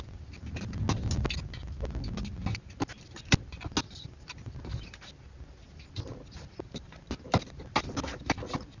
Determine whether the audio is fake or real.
real